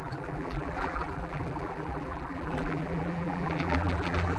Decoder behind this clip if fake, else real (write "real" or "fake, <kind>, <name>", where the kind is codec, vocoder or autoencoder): fake, vocoder, BigVGAN v2